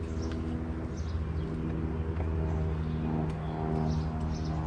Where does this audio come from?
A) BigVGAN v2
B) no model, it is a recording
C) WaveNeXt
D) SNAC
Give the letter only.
B